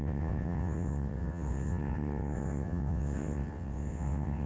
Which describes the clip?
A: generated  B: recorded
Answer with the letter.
A